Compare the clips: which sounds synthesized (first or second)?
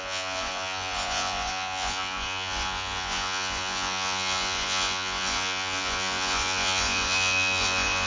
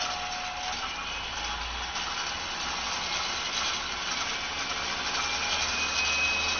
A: first